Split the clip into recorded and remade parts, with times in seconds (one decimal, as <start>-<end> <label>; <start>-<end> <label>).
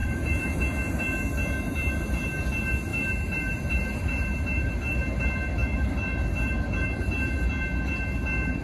0.0-0.6 remade; 0.6-2.9 recorded; 2.9-4.7 remade; 4.7-5.6 recorded; 5.6-6.5 remade; 6.5-8.6 recorded